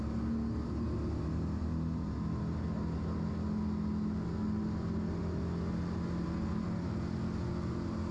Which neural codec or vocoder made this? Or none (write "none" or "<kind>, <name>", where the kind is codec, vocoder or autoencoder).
none